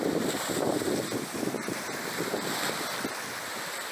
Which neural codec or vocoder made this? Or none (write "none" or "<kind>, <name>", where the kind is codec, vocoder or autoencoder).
none